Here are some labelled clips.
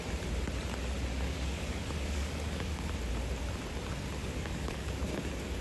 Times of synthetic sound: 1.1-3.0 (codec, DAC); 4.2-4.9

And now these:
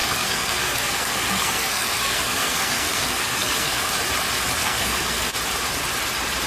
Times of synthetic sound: 0.0-3.9 (codec, SNAC); 4.6-5.3

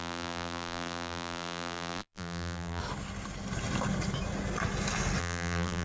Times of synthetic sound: 0.0-2.8 (vocoder, BigVGAN v2); 5.2-5.8

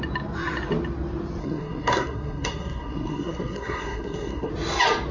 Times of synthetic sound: 1.4-4.5 (codec, SNAC)

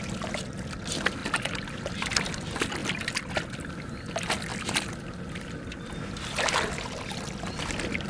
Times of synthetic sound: 1.2-2.3 (vocoder, BigVGAN v2); 2.8-3.3